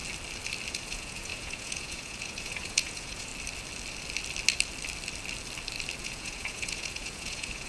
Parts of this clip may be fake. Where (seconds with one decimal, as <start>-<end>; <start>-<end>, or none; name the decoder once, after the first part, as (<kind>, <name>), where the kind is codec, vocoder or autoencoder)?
0.7-3.3 (vocoder, Vocos); 6.0-7.7